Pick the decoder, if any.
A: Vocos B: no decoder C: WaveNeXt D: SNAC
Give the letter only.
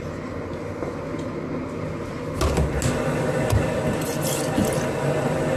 B